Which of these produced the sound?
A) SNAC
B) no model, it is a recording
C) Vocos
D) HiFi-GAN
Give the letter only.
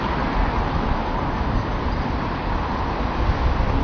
B